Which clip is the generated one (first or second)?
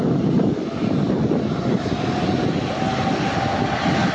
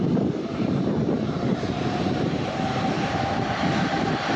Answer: second